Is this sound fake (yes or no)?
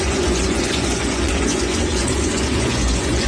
yes